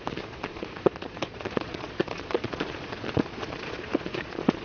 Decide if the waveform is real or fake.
fake